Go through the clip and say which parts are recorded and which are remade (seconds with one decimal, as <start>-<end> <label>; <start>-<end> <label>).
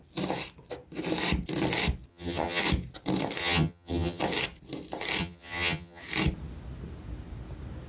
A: 0.0-2.1 recorded; 2.1-2.6 remade; 2.6-3.4 recorded; 3.4-4.2 remade; 4.2-5.2 recorded; 5.2-6.0 remade; 6.0-7.9 recorded